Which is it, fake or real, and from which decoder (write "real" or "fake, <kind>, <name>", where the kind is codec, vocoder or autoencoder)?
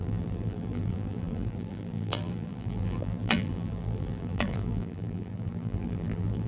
fake, vocoder, BigVGAN v2